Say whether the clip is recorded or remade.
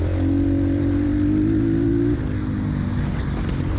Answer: recorded